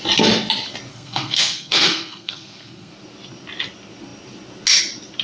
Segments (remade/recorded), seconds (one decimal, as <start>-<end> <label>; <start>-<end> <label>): 0.0-0.9 recorded; 0.9-2.9 remade; 2.9-5.2 recorded